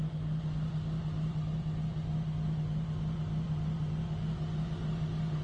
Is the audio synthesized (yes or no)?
no